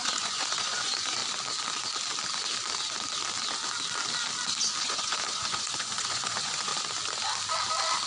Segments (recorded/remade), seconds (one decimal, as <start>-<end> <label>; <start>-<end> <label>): 0.0-1.2 remade; 1.2-4.8 recorded; 4.8-6.7 remade; 6.7-8.1 recorded